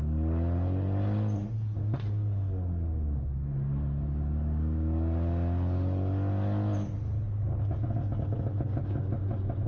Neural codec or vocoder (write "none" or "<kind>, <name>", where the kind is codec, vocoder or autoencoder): none